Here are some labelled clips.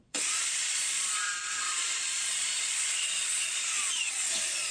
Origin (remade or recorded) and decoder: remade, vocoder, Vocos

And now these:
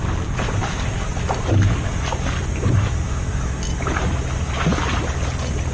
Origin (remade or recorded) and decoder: recorded